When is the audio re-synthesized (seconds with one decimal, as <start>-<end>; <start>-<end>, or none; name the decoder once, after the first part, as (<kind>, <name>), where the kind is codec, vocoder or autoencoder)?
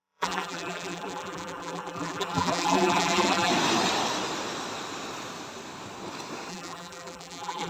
0.0-3.5 (vocoder, BigVGAN v2); 6.5-7.7